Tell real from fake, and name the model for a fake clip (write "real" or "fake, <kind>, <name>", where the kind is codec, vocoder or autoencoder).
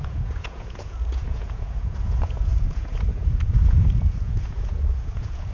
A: fake, vocoder, Vocos